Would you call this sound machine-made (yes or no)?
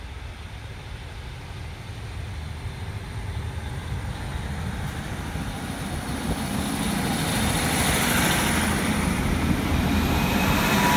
no